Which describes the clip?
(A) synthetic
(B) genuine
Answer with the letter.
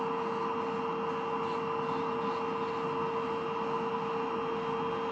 B